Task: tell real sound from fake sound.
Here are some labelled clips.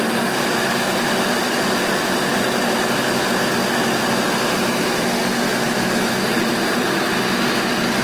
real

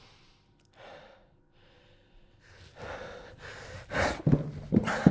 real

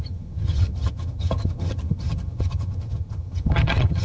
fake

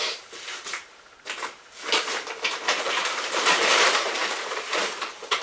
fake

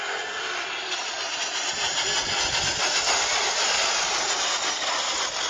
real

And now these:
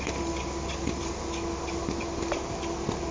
real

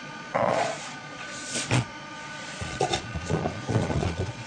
fake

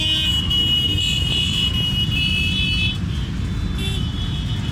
real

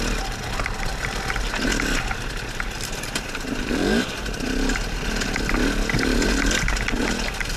real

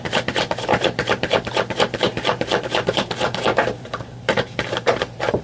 fake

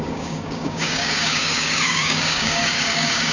fake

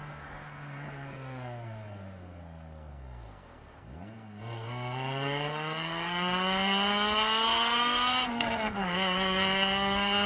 fake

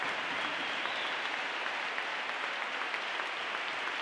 real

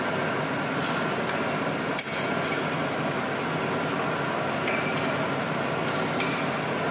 real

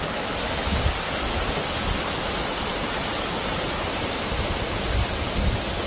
real